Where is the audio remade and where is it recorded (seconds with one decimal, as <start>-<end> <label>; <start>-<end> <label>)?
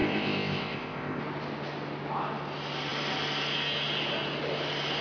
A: 0.0-1.2 remade; 1.2-5.0 recorded